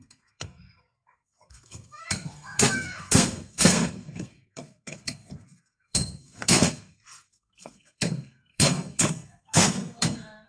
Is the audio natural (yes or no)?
no